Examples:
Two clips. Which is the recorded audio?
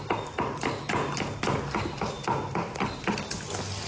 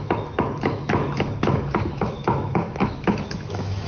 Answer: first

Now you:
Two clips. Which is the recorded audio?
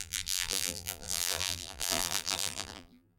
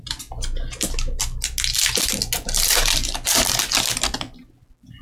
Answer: second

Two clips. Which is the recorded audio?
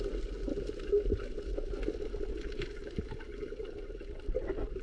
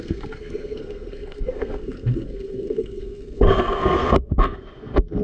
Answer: first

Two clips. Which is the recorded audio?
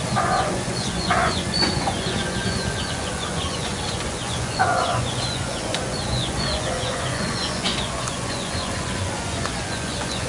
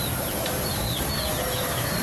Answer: second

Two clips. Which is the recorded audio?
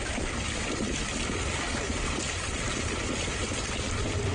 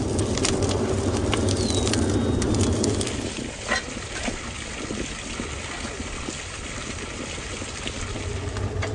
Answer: second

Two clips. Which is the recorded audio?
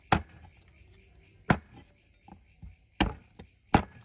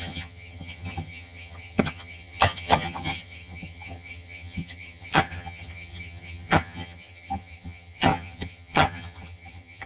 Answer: first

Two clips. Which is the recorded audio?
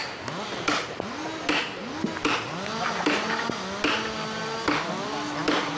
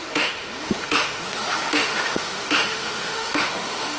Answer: first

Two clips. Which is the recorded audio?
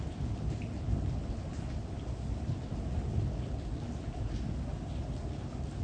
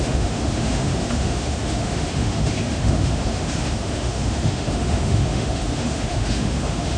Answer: first